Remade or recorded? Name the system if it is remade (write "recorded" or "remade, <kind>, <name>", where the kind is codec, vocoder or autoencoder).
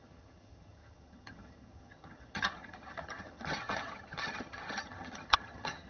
remade, vocoder, HiFi-GAN